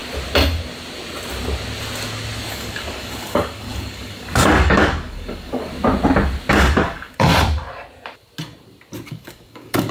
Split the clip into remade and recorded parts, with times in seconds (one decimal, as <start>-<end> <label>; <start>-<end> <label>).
0.0-2.5 recorded; 2.5-5.7 remade; 5.7-6.5 recorded; 6.5-7.3 remade; 7.3-9.1 recorded; 9.1-9.9 remade